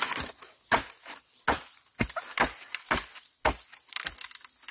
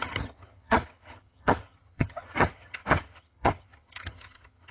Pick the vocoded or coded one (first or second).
second